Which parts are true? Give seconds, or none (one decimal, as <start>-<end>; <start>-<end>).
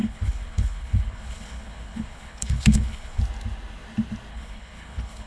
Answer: 3.2-4.3